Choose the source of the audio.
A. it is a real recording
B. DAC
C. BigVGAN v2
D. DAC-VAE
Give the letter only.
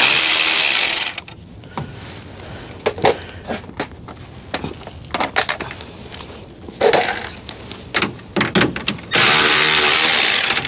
A